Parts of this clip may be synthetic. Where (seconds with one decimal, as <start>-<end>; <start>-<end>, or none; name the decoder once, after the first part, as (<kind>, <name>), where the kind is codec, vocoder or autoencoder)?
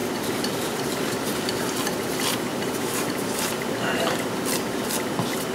0.0-1.4 (vocoder, BigVGAN v2); 2.5-4.1